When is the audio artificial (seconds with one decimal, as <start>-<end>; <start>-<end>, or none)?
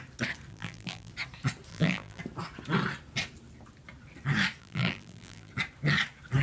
0.5-1.1; 1.7-2.2; 4.6-5.5